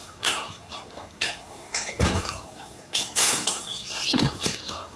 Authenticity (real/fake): fake